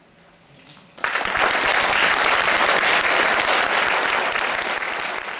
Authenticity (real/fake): real